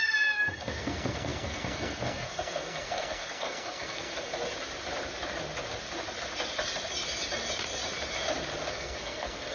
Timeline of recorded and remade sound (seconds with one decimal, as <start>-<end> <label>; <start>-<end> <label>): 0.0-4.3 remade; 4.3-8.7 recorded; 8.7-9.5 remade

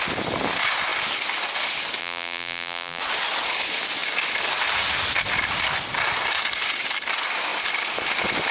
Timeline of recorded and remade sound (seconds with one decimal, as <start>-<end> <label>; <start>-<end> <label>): 0.0-2.0 recorded; 2.0-3.0 remade; 3.0-8.5 recorded

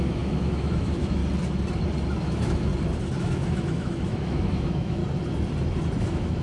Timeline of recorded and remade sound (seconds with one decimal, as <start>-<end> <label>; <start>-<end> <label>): 0.0-1.2 remade; 1.2-2.1 recorded; 2.1-2.7 remade; 2.7-3.2 recorded; 3.2-5.0 remade; 5.0-6.0 recorded; 6.0-6.4 remade

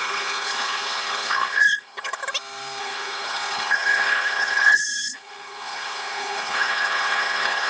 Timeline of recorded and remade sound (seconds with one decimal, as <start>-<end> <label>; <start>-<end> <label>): 0.0-2.2 remade; 2.2-2.8 recorded; 2.8-7.7 remade

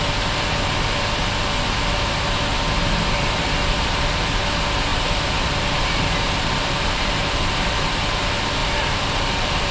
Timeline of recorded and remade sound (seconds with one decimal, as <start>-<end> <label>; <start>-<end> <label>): 0.0-4.9 recorded; 4.9-8.0 remade; 8.0-8.6 recorded; 8.6-9.7 remade

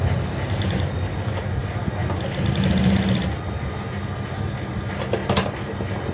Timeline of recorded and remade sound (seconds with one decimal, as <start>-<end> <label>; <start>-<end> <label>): 0.0-6.1 recorded

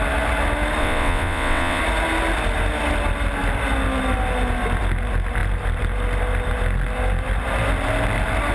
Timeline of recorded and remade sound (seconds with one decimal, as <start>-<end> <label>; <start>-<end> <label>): 0.0-0.8 recorded; 0.8-1.8 remade; 1.8-8.5 recorded

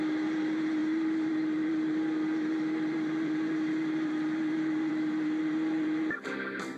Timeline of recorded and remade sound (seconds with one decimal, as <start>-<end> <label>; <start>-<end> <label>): 0.0-6.8 remade